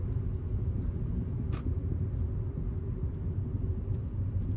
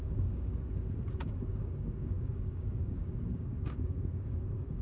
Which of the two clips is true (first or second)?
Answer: first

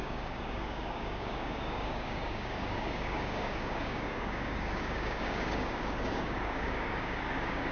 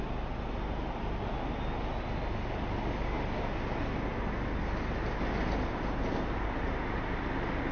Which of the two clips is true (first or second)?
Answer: second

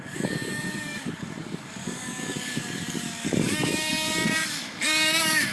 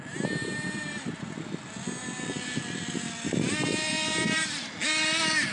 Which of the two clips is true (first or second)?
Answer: second